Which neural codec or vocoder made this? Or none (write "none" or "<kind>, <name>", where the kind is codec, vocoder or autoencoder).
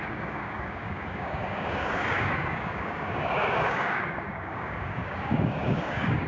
codec, DAC